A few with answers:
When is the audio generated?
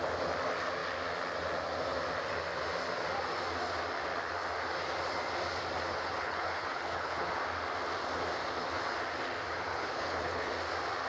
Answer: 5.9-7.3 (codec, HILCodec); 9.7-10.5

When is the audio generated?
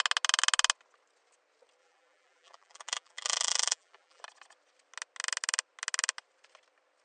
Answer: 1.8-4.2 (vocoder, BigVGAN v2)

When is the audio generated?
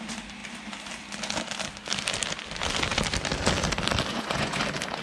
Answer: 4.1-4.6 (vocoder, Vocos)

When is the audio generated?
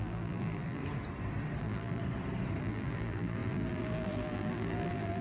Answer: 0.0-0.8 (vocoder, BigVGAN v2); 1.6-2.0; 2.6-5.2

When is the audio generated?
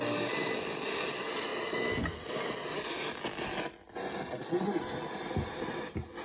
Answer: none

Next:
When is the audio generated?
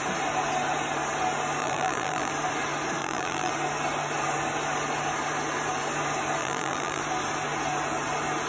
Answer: 1.6-2.3 (vocoder, BigVGAN v2); 3.0-3.5; 6.4-7.0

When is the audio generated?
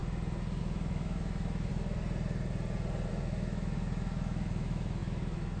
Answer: 0.6-1.7 (autoencoder, DAC-VAE); 3.1-5.6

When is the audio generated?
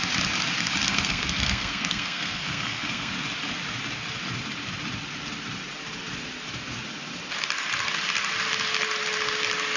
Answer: 0.8-3.1 (codec, SNAC)